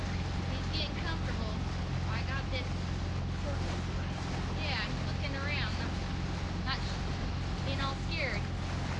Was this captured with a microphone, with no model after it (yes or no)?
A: yes